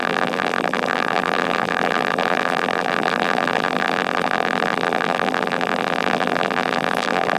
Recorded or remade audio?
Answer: remade